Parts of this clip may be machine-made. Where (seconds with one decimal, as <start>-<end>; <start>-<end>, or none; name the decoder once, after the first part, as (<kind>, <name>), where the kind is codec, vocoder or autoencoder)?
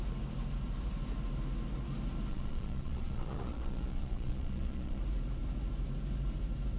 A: 2.3-5.0 (vocoder, Vocos)